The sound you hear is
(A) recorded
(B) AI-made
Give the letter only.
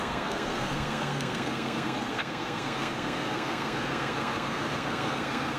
B